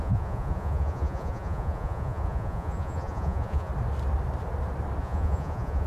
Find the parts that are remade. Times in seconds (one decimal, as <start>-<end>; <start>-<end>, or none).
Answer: 0.0-3.7; 5.0-5.9